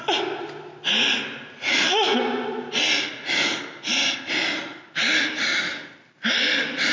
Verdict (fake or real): real